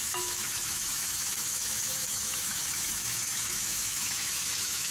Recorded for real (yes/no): no